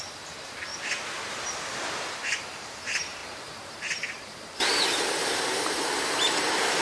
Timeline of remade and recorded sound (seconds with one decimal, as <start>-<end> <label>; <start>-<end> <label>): 0.0-0.7 remade; 0.7-2.0 recorded; 2.0-6.8 remade